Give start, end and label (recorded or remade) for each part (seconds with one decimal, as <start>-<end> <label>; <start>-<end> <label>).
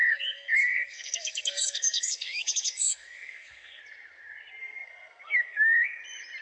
0.0-3.8 remade; 3.8-4.6 recorded; 4.6-6.0 remade; 6.0-6.4 recorded